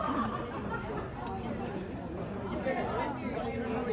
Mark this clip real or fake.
real